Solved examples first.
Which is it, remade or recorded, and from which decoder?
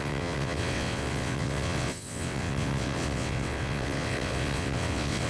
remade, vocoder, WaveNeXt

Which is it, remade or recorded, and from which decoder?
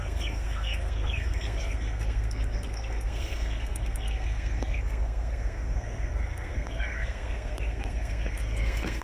remade, codec, SNAC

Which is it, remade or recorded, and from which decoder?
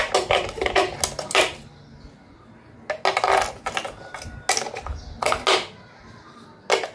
recorded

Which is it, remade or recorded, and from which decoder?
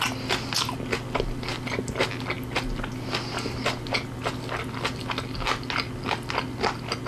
recorded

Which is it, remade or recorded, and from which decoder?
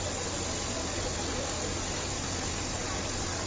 recorded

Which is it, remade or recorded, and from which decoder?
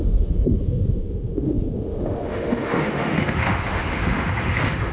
remade, autoencoder, DAC-VAE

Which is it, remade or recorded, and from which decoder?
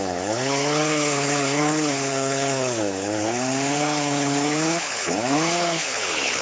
remade, codec, HILCodec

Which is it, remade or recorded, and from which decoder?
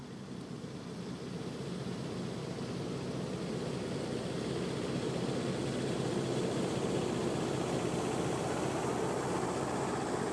recorded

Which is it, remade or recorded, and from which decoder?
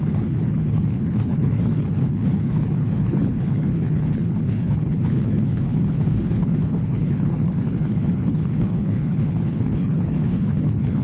remade, codec, HILCodec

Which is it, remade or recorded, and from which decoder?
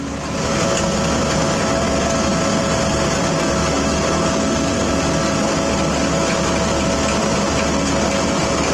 recorded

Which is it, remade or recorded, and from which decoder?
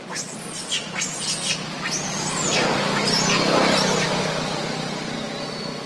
recorded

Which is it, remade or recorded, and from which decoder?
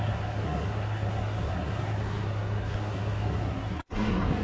remade, codec, SNAC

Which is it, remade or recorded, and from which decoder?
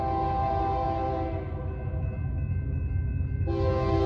recorded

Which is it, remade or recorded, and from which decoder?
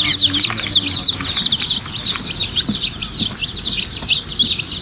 recorded